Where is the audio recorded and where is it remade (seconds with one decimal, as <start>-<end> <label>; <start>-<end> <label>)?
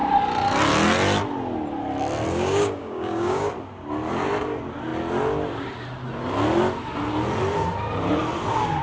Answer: 0.0-2.3 recorded; 2.3-3.5 remade; 3.5-8.8 recorded